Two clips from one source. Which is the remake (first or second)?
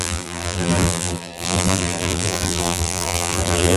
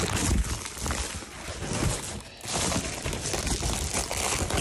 first